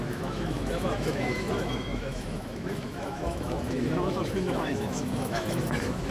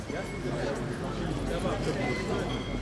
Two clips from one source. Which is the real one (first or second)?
second